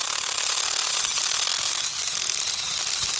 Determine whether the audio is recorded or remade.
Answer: recorded